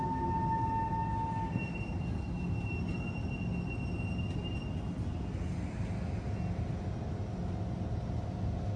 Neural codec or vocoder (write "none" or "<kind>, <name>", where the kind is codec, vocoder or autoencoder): none